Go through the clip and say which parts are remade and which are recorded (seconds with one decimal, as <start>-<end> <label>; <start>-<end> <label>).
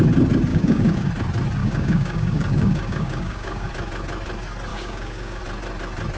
0.0-0.5 recorded; 0.5-1.1 remade; 1.1-1.6 recorded; 1.6-3.7 remade; 3.7-4.7 recorded; 4.7-5.4 remade; 5.4-6.2 recorded